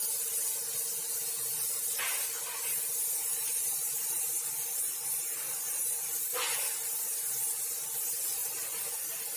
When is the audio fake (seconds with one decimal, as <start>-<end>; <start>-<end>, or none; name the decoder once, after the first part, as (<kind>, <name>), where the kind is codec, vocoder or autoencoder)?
none